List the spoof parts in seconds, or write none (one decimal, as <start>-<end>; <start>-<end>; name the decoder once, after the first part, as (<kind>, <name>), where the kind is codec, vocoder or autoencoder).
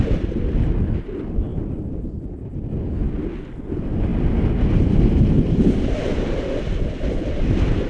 none